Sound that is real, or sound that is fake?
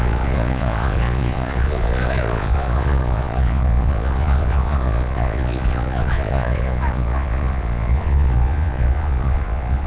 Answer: fake